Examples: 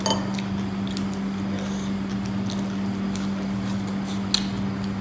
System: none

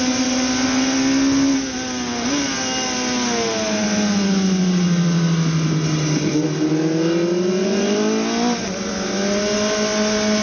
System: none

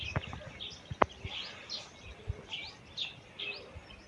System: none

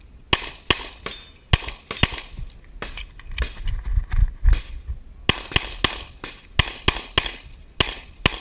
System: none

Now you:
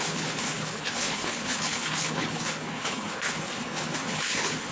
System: codec, HILCodec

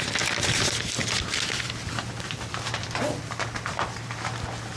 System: none